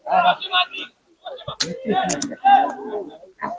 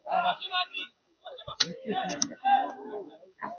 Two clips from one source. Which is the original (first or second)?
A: first